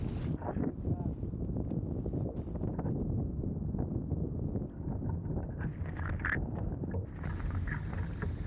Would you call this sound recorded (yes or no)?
yes